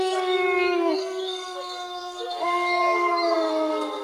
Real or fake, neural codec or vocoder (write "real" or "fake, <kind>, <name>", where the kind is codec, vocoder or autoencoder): fake, codec, SNAC